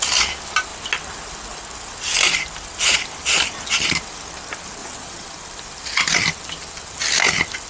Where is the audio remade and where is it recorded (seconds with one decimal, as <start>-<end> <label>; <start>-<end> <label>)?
0.0-4.8 recorded; 4.8-5.3 remade; 5.3-7.7 recorded